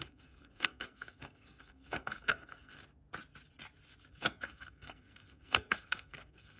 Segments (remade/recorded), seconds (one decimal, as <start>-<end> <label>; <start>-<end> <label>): 0.0-2.8 remade; 2.8-4.1 recorded; 4.1-6.6 remade